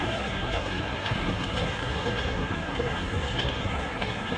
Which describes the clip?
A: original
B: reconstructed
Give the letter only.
B